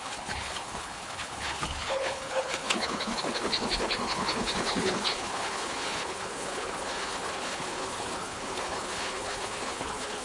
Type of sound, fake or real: fake